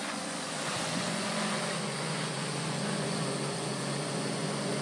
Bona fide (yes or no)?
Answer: no